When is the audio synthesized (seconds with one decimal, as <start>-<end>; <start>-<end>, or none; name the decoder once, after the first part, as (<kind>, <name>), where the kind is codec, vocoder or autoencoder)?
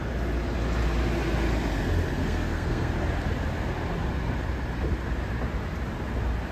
2.2-2.9 (codec, SNAC)